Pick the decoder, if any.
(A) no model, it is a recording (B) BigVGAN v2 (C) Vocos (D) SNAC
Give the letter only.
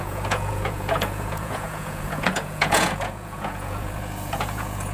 C